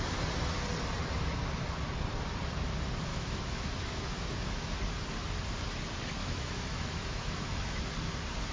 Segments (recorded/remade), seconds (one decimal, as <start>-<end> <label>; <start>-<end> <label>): 0.0-3.1 recorded; 3.1-4.7 remade; 4.7-6.2 recorded; 6.2-7.8 remade; 7.8-8.5 recorded